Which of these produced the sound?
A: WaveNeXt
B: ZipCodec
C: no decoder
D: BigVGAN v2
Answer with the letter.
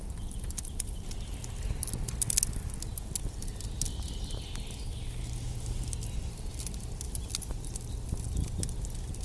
C